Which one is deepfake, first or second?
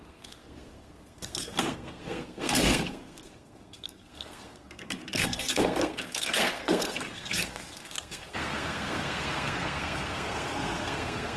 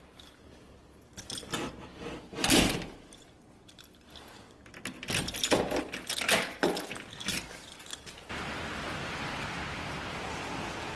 first